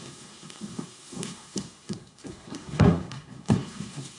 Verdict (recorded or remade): remade